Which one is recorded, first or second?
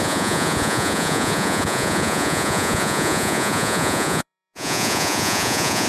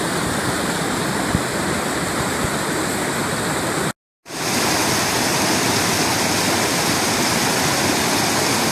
second